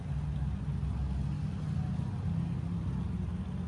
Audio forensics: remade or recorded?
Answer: recorded